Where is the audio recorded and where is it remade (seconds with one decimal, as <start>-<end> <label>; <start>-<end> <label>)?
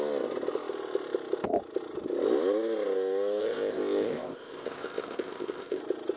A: 0.0-3.4 recorded; 3.4-5.8 remade; 5.8-6.2 recorded